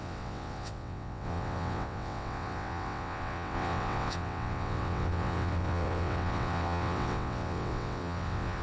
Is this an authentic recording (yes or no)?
no